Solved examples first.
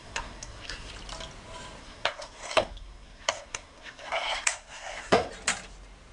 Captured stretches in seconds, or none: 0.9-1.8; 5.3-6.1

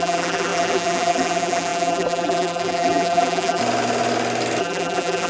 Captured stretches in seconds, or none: 3.6-4.6